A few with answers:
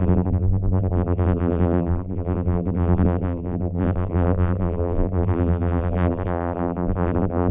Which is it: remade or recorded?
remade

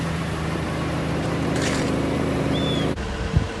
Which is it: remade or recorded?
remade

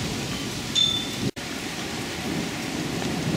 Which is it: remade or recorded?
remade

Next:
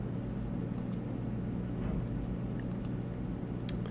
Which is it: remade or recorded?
recorded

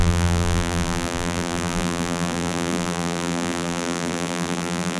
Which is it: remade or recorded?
remade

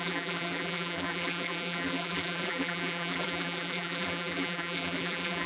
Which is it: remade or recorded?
remade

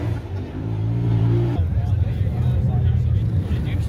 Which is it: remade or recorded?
remade